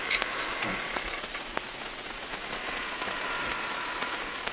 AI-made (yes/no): yes